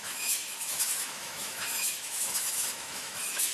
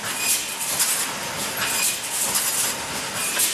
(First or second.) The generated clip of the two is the first